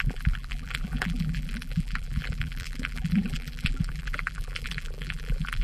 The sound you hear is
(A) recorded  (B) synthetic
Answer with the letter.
B